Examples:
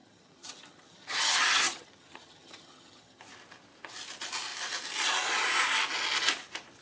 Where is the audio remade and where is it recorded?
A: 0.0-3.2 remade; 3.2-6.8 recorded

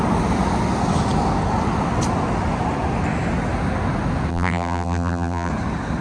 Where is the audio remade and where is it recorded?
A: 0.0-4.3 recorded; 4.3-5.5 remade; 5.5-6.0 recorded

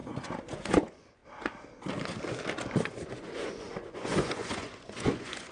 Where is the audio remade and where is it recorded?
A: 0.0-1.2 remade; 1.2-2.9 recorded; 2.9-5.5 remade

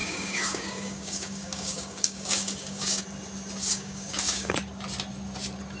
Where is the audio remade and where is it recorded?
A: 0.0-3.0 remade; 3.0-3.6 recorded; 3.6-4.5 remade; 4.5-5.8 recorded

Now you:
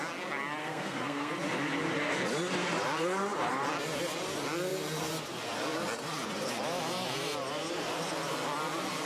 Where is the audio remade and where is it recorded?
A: 0.0-0.6 recorded; 0.6-1.3 remade; 1.3-9.1 recorded